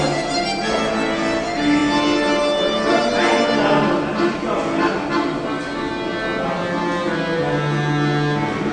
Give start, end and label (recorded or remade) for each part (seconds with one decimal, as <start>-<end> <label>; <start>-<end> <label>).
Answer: 0.0-8.7 recorded